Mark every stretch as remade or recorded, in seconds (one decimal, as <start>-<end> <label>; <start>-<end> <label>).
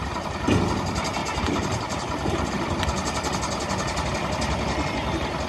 0.0-1.2 recorded; 1.2-2.5 remade; 2.5-5.5 recorded